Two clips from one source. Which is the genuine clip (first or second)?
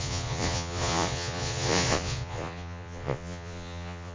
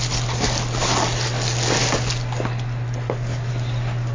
second